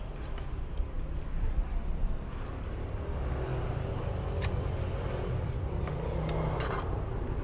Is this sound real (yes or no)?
yes